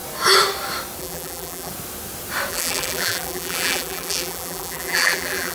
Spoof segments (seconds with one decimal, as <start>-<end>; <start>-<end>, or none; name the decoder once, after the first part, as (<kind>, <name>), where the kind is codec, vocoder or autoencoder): 1.0-1.7 (vocoder, BigVGAN v2); 2.5-5.5